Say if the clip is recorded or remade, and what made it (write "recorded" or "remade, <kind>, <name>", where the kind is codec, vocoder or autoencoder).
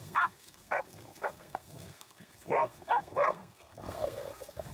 remade, codec, SNAC